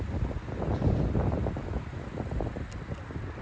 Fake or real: real